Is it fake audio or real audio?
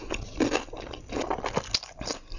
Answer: real